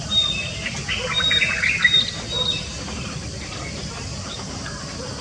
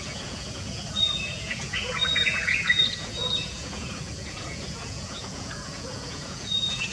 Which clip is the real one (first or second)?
first